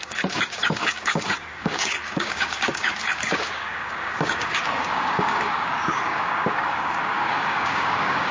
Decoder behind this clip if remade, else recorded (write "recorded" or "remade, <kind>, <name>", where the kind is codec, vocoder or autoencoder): remade, codec, DAC